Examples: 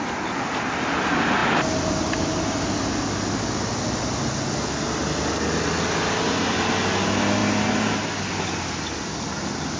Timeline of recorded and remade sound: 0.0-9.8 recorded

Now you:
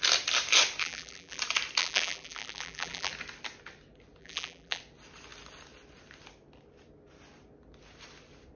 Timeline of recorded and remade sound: 0.0-0.8 recorded; 0.8-1.4 remade; 1.4-1.8 recorded; 1.8-3.1 remade; 3.1-4.2 recorded; 4.2-4.8 remade; 4.8-8.6 recorded

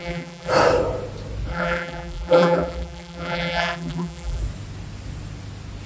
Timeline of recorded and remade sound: 0.0-0.5 remade; 0.5-1.5 recorded; 1.5-4.4 remade; 4.4-5.9 recorded

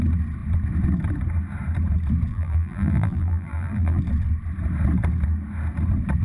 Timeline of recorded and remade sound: 0.0-2.3 recorded; 2.3-4.0 remade; 4.0-6.2 recorded

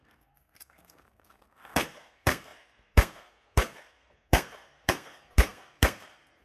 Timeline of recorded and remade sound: 0.0-6.4 remade

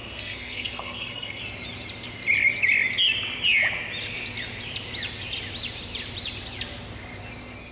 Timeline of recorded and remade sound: 0.0-1.4 remade; 1.4-7.7 recorded

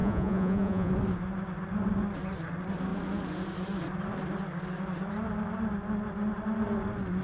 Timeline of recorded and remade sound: 0.0-0.9 remade; 0.9-7.2 recorded

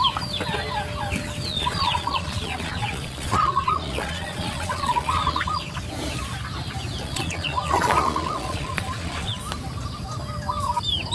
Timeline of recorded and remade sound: 0.0-1.5 recorded; 1.5-5.6 remade; 5.6-7.0 recorded; 7.0-9.4 remade; 9.4-11.1 recorded